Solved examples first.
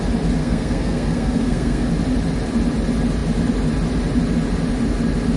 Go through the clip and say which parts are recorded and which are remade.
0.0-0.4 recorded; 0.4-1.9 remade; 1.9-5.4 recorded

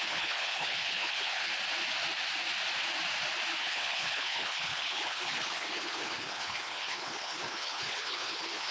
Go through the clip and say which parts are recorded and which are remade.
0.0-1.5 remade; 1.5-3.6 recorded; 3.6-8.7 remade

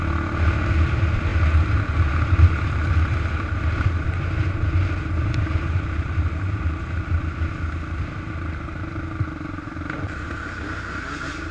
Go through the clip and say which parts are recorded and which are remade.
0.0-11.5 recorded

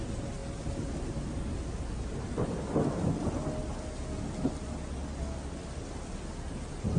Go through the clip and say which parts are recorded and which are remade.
0.0-7.0 recorded

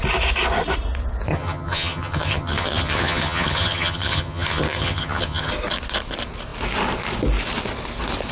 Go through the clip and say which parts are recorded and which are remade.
0.0-1.3 recorded; 1.3-5.5 remade; 5.5-8.3 recorded

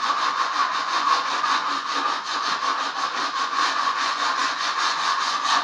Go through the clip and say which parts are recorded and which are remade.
0.0-2.6 remade; 2.6-3.4 recorded; 3.4-5.6 remade

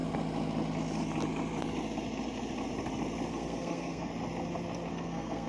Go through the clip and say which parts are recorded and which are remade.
0.0-3.3 recorded; 3.3-4.1 remade; 4.1-4.9 recorded; 4.9-5.5 remade